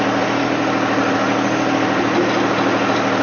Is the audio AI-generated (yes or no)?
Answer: no